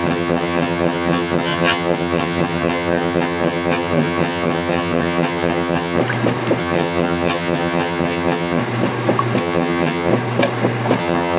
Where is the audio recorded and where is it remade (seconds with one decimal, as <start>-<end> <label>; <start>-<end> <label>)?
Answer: 0.0-6.0 remade; 6.0-6.6 recorded; 6.6-8.6 remade; 8.6-9.4 recorded; 9.4-10.1 remade; 10.1-11.0 recorded; 11.0-11.4 remade